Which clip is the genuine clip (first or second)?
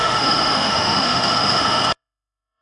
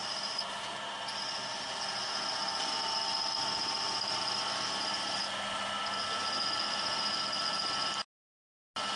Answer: second